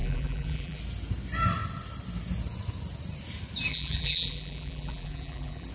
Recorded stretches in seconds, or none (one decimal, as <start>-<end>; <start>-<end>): 0.8-3.7